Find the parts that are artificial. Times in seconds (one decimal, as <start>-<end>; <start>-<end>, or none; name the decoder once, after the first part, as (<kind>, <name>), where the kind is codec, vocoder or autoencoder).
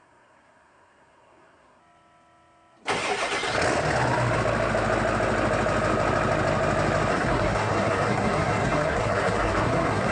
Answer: 0.0-1.8 (codec, SNAC); 7.1-10.1